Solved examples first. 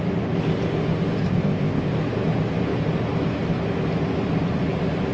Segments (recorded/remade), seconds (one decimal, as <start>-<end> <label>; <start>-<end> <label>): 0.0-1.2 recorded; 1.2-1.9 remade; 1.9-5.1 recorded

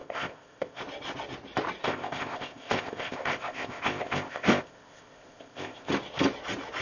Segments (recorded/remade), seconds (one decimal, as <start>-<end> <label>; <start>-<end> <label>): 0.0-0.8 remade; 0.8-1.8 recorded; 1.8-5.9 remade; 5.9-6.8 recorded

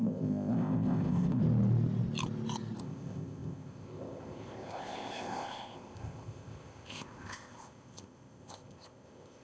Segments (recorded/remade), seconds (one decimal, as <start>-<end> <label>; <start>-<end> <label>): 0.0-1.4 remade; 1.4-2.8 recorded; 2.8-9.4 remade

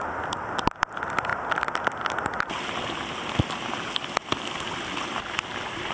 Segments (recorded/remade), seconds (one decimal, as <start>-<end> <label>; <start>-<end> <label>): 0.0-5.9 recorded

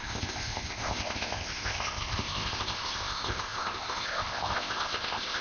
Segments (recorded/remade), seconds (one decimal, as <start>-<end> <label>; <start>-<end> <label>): 0.0-5.4 remade

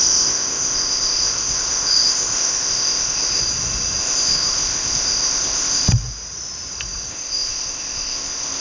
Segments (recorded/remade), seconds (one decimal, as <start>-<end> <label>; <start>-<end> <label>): 0.0-3.4 remade; 3.4-4.0 recorded; 4.0-5.9 remade; 5.9-7.1 recorded; 7.1-8.6 remade